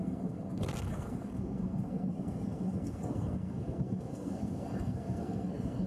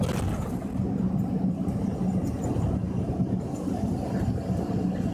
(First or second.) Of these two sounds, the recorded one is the second